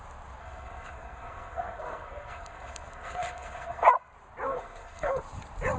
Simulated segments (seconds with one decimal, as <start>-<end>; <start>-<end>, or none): 0.4-3.9; 4.5-5.2